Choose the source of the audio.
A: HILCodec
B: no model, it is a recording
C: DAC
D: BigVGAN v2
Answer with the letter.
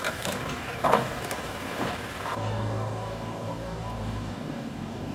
C